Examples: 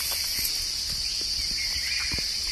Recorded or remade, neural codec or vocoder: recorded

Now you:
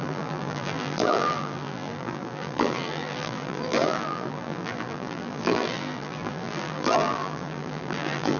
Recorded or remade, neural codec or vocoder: remade, vocoder, BigVGAN v2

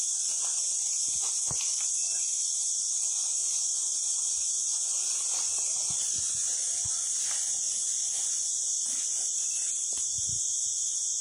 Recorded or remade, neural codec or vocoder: recorded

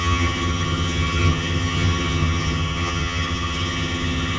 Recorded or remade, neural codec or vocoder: remade, vocoder, HiFi-GAN